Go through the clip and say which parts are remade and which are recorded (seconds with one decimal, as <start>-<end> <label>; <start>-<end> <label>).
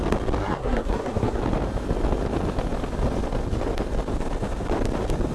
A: 0.0-0.4 recorded; 0.4-1.4 remade; 1.4-5.3 recorded